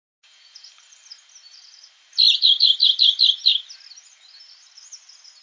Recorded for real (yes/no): yes